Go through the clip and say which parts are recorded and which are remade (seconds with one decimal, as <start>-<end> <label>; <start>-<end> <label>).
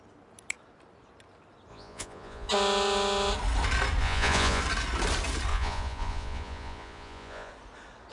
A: 0.0-1.7 recorded; 1.7-2.5 remade; 2.5-4.0 recorded; 4.0-4.6 remade; 4.6-5.5 recorded; 5.5-7.5 remade; 7.5-8.1 recorded